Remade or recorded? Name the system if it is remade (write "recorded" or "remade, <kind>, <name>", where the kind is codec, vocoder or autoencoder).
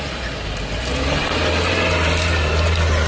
recorded